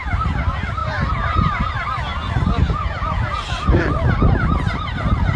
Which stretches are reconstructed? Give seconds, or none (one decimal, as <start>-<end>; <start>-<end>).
0.8-1.7